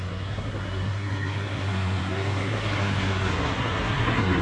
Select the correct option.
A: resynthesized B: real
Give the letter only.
A